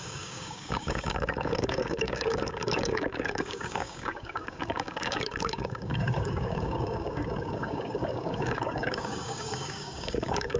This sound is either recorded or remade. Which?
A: remade